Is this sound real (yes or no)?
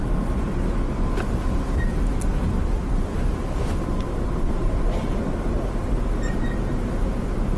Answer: yes